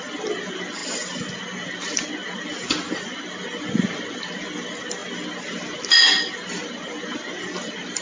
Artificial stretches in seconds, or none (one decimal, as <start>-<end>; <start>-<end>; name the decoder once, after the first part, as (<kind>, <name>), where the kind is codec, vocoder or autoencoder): none

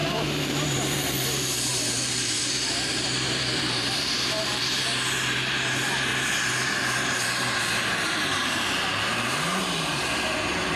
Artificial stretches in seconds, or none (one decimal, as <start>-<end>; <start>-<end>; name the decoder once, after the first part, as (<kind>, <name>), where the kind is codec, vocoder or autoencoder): 0.0-4.6 (vocoder, BigVGAN v2); 8.4-9.6

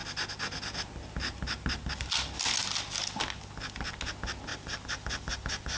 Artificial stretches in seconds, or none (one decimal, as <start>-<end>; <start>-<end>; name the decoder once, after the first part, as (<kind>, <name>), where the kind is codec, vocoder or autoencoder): 4.5-5.3 (vocoder, BigVGAN v2)

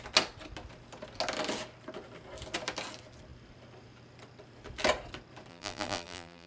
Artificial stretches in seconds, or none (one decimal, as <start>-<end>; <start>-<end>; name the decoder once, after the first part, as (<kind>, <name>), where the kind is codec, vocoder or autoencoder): 5.5-6.5 (vocoder, BigVGAN v2)